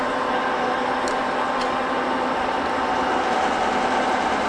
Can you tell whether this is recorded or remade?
recorded